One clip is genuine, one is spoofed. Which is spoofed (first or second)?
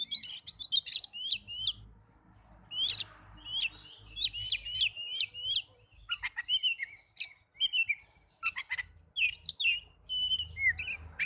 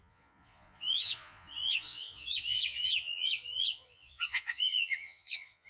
second